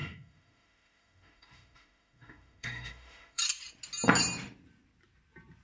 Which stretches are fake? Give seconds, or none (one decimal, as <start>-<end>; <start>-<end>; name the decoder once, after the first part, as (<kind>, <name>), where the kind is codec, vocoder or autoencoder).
0.0-3.4 (autoencoder, DAC-VAE)